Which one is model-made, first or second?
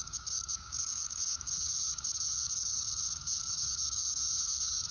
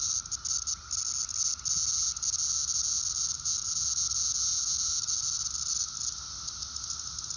first